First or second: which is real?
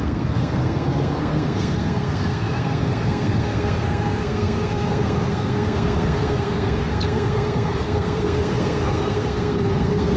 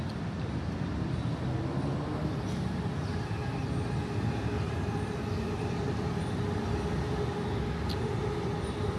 second